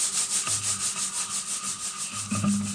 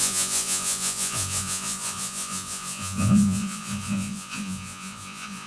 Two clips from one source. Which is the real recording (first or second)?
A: first